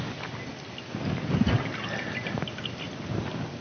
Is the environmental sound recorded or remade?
recorded